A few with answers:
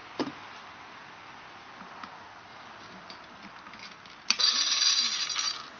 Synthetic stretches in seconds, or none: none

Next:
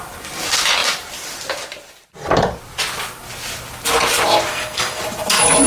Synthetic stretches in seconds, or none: 4.5-5.0 (codec, SNAC)

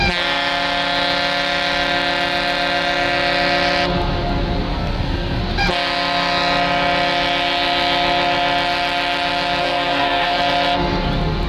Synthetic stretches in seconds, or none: 4.7-5.4 (codec, SNAC); 9.6-10.4

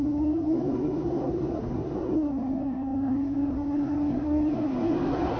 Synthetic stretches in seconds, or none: 0.0-5.4 (codec, SNAC)

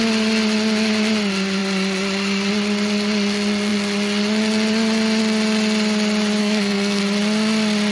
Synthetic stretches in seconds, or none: 6.4-7.0 (codec, SNAC)

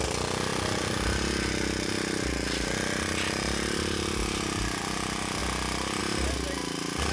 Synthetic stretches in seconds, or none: none

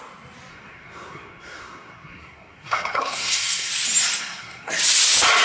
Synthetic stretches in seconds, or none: 0.5-3.7 (codec, SNAC); 4.2-4.7